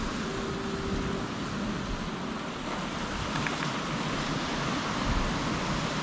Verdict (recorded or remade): recorded